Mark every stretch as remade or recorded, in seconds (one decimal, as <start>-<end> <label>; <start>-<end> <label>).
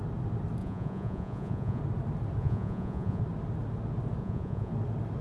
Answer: 0.0-0.6 recorded; 0.6-1.8 remade; 1.8-2.4 recorded; 2.4-3.2 remade; 3.2-4.2 recorded; 4.2-4.7 remade; 4.7-5.2 recorded